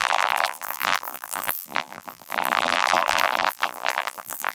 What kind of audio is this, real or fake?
fake